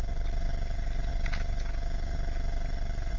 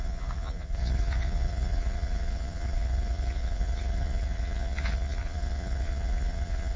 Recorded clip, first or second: first